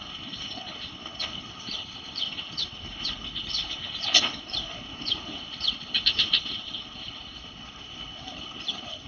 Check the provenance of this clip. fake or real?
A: fake